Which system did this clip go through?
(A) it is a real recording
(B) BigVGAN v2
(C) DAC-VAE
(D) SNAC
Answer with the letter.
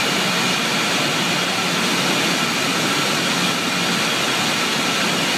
A